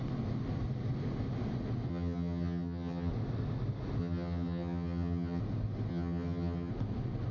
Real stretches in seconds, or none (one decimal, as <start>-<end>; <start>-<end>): 0.0-1.9; 3.1-4.0; 5.4-5.9; 6.7-7.3